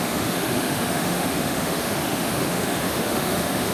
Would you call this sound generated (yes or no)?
yes